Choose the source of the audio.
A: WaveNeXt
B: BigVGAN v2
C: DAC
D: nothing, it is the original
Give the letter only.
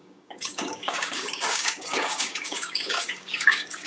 C